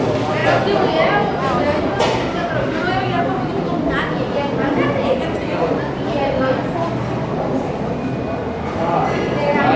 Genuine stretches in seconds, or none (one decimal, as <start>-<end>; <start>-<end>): 0.0-9.8